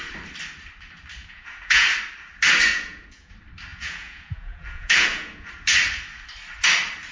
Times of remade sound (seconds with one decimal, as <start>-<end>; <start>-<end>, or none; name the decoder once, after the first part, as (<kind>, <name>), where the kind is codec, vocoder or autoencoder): 1.2-1.9 (vocoder, Vocos); 2.7-3.3; 3.7-5.5